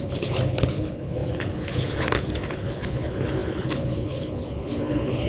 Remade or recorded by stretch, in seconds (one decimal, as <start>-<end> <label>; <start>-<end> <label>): 0.0-5.3 remade